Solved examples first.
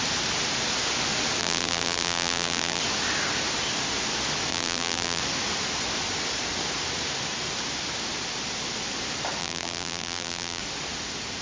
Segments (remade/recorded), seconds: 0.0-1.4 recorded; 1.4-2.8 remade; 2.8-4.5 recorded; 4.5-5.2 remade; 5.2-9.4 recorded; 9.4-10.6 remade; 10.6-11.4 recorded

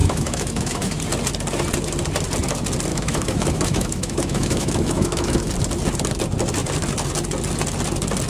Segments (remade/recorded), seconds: 0.0-1.0 remade; 1.0-2.9 recorded; 2.9-5.5 remade; 5.5-8.3 recorded

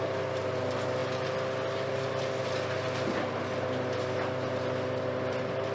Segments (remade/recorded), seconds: 0.0-5.7 recorded